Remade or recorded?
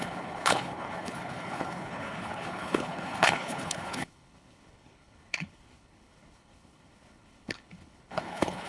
remade